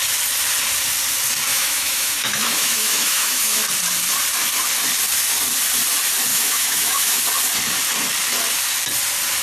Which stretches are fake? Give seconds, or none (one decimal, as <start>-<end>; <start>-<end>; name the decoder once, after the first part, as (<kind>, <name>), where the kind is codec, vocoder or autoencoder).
1.5-3.6 (autoencoder, DAC-VAE); 6.3-7.2